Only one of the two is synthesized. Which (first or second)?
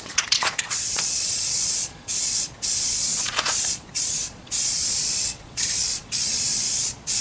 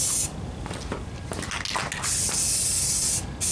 first